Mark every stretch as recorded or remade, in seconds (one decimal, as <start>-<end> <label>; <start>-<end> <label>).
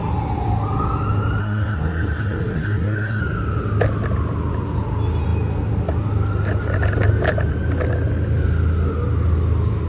0.0-1.4 recorded; 1.4-3.2 remade; 3.2-9.9 recorded